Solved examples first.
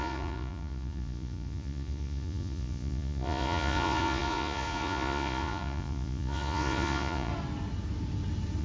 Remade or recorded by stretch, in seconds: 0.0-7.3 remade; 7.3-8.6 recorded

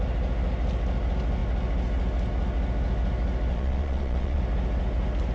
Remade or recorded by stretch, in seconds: 0.0-3.5 recorded; 3.5-4.4 remade; 4.4-5.3 recorded

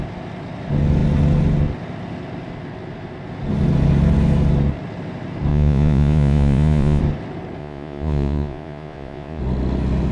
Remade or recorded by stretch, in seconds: 0.0-5.5 recorded; 5.5-7.0 remade; 7.0-7.6 recorded; 7.6-9.4 remade; 9.4-10.1 recorded

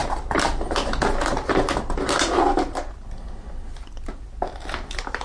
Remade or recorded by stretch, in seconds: 0.0-5.2 recorded

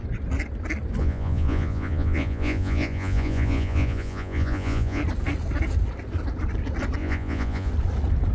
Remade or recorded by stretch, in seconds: 0.0-1.0 recorded; 1.0-5.0 remade; 5.0-7.0 recorded; 7.0-7.7 remade; 7.7-8.3 recorded

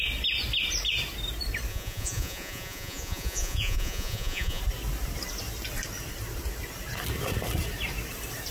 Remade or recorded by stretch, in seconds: 0.0-1.7 recorded; 1.7-4.6 remade; 4.6-8.5 recorded